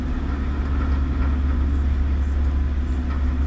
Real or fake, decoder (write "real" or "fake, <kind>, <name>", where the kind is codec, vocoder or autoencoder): real